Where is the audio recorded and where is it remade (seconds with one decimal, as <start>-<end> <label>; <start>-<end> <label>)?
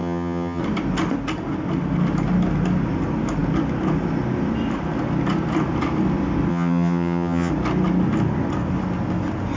0.0-0.6 remade; 0.6-6.5 recorded; 6.5-7.5 remade; 7.5-9.6 recorded